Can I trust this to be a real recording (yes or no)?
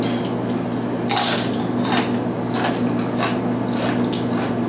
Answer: yes